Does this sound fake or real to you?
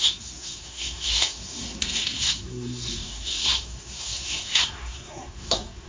fake